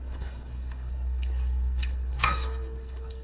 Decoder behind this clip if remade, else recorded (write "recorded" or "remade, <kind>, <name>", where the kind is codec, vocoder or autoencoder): remade, codec, SNAC